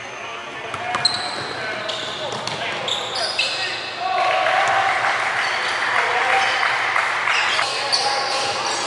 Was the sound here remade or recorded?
recorded